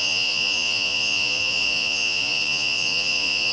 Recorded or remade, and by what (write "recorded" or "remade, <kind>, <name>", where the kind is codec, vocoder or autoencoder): remade, vocoder, Vocos